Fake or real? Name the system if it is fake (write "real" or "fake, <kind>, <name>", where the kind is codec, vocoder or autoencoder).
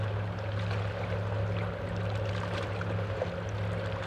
real